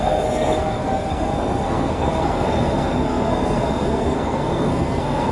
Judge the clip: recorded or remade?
remade